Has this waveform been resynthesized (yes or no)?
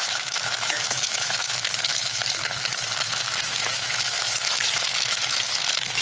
yes